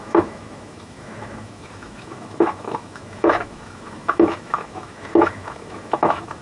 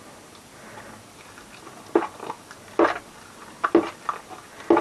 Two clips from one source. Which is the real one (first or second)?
second